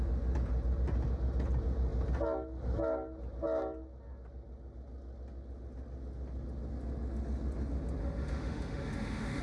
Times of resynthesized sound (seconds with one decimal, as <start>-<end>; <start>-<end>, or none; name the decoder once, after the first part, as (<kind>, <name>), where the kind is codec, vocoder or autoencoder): 8.0-9.4 (autoencoder, DAC-VAE)